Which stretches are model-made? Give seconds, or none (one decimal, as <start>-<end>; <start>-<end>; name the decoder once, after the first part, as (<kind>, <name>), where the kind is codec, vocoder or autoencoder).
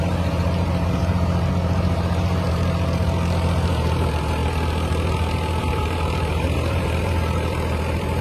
0.0-4.4 (vocoder, BigVGAN v2); 5.6-8.2